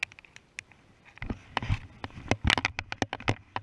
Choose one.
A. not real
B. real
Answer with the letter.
B